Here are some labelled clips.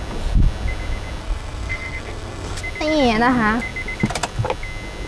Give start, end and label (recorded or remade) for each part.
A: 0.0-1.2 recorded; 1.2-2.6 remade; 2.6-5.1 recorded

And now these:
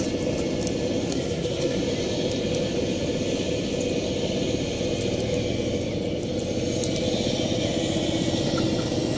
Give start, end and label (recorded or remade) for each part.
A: 0.0-1.1 recorded; 1.1-1.8 remade; 1.8-9.2 recorded

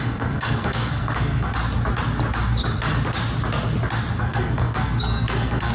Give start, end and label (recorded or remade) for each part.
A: 0.0-1.5 remade; 1.5-4.2 recorded; 4.2-5.7 remade

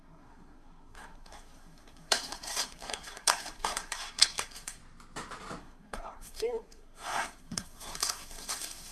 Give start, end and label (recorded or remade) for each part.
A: 0.0-4.8 remade; 4.8-5.6 recorded; 5.6-8.9 remade

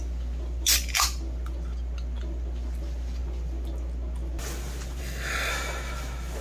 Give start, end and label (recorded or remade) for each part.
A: 0.0-5.0 recorded; 5.0-5.5 remade; 5.5-6.4 recorded

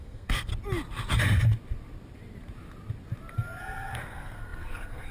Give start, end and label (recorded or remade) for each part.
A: 0.0-0.5 remade; 0.5-3.6 recorded; 3.6-5.1 remade

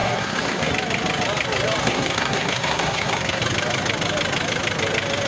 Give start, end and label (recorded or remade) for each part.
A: 0.0-0.7 remade; 0.7-1.8 recorded; 1.8-3.4 remade; 3.4-5.3 recorded

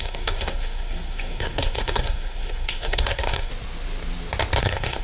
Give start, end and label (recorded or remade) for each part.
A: 0.0-3.5 remade; 3.5-4.6 recorded; 4.6-5.0 remade